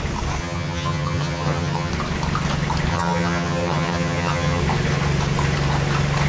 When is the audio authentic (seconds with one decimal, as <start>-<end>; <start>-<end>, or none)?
0.0-0.4; 1.9-2.9; 4.6-6.3